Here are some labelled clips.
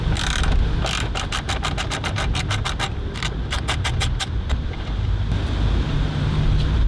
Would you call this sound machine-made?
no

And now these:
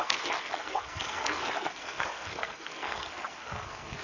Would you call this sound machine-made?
yes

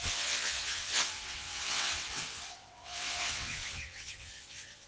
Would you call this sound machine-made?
yes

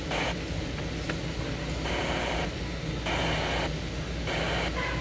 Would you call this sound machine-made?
no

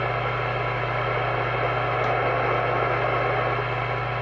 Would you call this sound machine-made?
no